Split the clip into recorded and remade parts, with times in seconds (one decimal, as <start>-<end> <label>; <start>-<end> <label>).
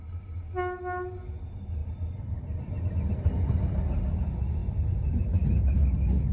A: 0.0-1.8 recorded; 1.8-2.8 remade; 2.8-6.3 recorded